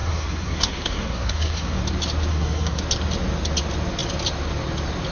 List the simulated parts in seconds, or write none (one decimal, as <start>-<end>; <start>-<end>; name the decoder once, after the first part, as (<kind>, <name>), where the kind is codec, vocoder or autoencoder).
0.0-1.8 (codec, SNAC); 2.3-2.8